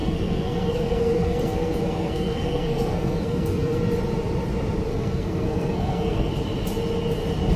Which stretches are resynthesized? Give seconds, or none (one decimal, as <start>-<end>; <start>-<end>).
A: 0.0-3.8; 4.9-6.3